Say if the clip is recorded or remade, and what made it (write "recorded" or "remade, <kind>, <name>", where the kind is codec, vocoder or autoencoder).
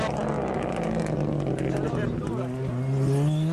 recorded